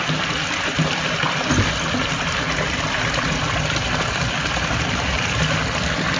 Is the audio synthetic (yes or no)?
no